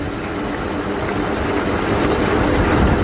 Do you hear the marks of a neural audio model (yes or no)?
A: no